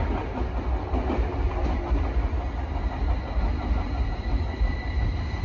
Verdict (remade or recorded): recorded